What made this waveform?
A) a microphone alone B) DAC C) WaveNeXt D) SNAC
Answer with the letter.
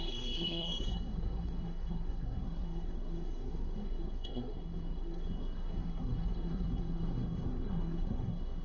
D